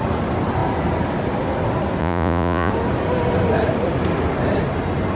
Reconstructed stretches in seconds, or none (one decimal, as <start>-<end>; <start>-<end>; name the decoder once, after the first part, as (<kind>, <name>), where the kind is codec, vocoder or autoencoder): 2.0-2.7 (vocoder, Vocos)